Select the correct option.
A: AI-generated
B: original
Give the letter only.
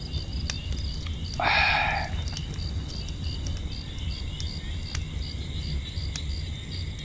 B